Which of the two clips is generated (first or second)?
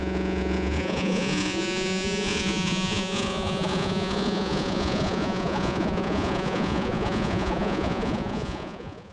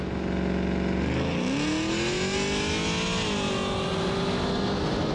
first